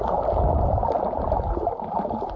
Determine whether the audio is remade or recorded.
recorded